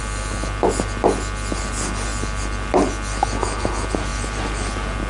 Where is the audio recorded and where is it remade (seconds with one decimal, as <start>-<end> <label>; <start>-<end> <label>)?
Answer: 0.0-5.1 recorded